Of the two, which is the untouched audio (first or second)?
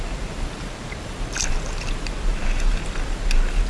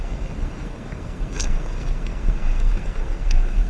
first